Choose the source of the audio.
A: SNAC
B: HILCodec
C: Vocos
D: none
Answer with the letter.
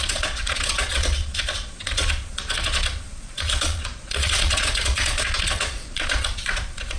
C